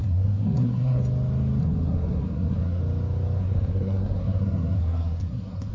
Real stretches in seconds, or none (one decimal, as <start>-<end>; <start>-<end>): 1.0-1.6; 2.8-3.4